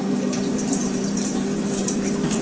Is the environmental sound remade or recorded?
remade